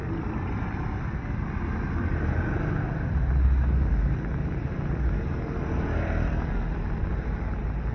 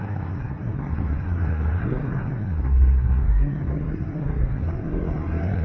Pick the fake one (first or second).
second